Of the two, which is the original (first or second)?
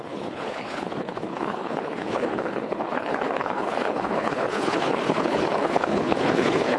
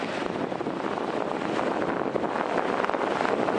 second